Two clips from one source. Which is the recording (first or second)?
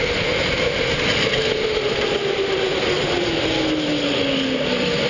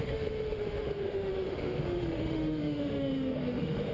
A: first